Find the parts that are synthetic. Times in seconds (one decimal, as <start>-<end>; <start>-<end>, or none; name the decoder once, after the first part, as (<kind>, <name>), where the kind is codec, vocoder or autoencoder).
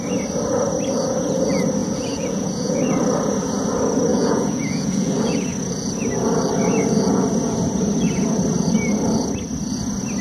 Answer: 1.8-2.8 (vocoder, Vocos); 4.1-5.1